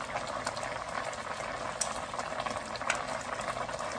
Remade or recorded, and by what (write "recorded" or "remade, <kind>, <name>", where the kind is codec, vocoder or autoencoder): recorded